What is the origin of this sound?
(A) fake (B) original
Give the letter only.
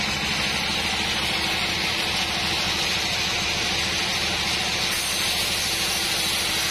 B